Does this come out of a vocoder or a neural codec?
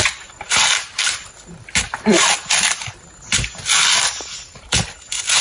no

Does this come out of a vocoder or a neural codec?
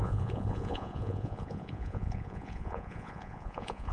yes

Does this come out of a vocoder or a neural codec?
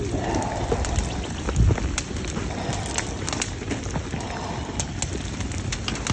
no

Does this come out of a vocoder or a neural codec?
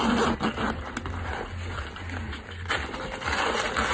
no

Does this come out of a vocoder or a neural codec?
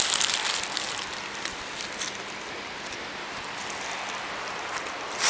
no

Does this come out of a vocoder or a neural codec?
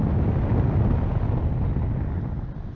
no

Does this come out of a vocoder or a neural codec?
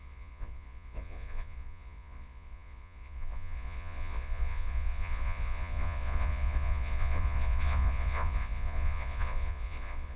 yes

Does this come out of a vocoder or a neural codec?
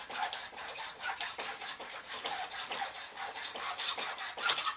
no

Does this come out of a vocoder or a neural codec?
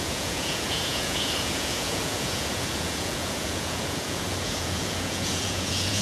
yes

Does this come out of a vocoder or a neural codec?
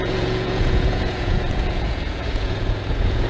yes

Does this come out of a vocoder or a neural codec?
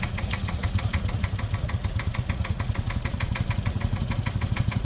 yes